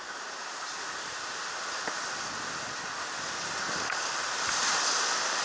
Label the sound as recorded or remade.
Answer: recorded